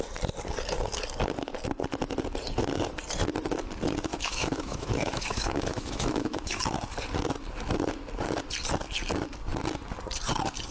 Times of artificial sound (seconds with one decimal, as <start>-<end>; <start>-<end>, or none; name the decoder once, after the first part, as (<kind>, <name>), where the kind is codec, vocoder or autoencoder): 4.1-6.6 (autoencoder, DAC-VAE)